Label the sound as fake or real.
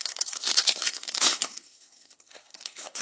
fake